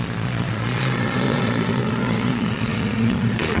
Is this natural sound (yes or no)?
no